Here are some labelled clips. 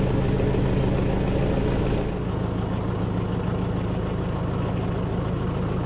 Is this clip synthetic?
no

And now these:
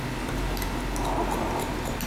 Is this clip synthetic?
no